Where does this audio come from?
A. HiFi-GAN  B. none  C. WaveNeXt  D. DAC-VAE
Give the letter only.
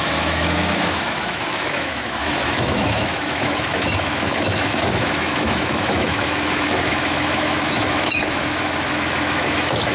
D